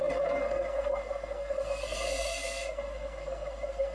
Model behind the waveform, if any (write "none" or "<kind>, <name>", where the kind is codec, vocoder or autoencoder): codec, SNAC